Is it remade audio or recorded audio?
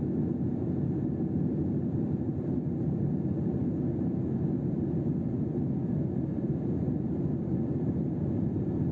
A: recorded